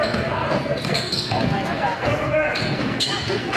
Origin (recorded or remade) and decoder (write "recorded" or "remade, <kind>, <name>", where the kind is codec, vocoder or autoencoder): remade, codec, SNAC